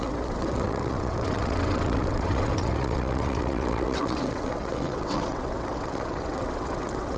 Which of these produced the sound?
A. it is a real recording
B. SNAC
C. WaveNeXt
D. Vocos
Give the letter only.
C